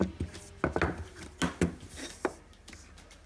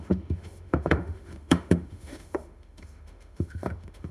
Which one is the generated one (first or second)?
second